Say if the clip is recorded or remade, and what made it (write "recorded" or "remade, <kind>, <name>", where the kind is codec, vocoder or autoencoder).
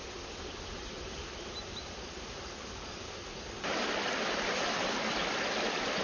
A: recorded